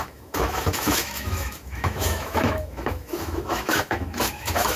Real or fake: fake